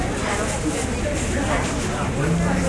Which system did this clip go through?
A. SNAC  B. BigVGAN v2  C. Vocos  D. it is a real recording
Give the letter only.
D